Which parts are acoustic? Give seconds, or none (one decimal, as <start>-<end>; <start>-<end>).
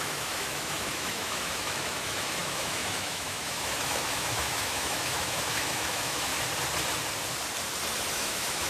6.3-8.1